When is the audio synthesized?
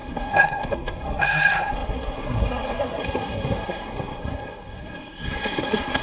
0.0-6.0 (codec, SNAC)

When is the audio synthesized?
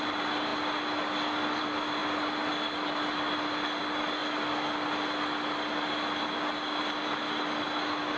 none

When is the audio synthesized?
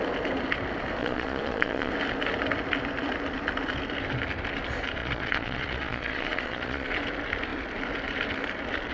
1.0-1.9 (vocoder, Vocos); 5.0-7.0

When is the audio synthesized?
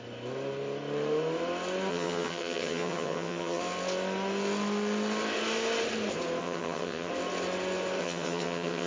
1.9-3.6 (vocoder, HiFi-GAN); 6.4-7.1; 8.0-8.9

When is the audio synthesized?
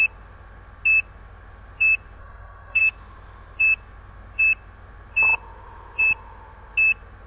2.2-2.8 (codec, SNAC)